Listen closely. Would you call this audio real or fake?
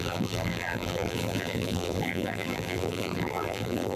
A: fake